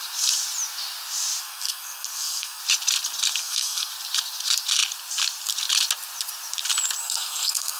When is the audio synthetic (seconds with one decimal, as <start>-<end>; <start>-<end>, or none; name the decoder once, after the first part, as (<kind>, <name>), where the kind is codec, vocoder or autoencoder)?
1.4-2.6 (codec, SNAC); 3.4-3.9; 7.0-7.8